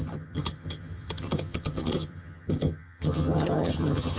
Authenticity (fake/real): fake